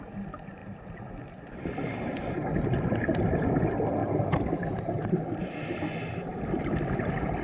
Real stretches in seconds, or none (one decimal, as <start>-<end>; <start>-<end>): 0.0-0.6; 1.1-4.0; 4.8-7.4